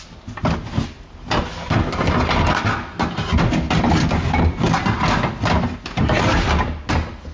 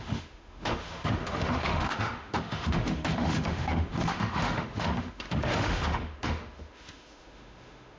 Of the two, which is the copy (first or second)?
second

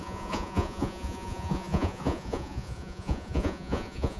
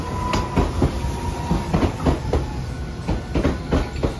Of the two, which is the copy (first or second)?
first